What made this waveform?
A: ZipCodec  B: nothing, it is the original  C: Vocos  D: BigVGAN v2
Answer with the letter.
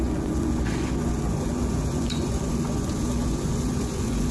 C